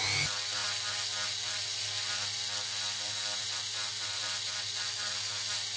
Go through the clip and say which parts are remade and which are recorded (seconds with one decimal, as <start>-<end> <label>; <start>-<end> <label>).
0.0-5.8 recorded